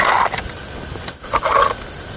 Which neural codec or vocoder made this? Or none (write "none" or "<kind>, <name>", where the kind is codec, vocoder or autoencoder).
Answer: none